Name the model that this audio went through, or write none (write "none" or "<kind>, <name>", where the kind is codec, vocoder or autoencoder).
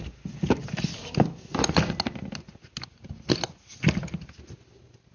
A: none